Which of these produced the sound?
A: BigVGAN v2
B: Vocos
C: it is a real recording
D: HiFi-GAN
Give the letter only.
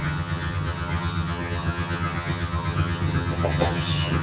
D